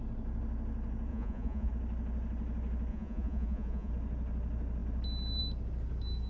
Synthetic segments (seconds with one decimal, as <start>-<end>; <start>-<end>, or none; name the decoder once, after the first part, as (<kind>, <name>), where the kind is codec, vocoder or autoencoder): 1.1-1.7 (vocoder, Vocos); 2.9-3.9